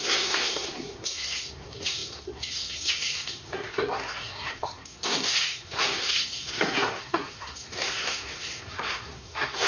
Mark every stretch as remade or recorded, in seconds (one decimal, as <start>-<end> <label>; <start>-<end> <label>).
0.0-9.7 remade